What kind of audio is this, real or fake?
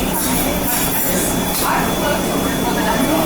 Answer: fake